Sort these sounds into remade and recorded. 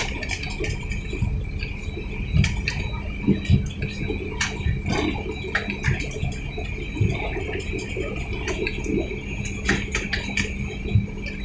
recorded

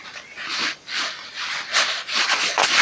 recorded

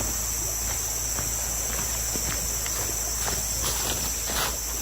recorded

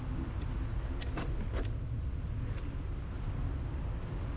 recorded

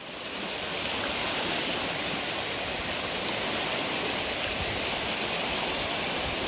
recorded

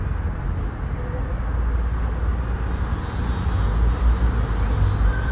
recorded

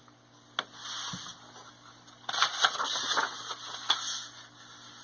recorded